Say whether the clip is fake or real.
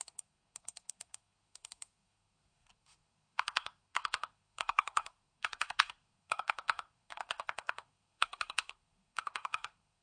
fake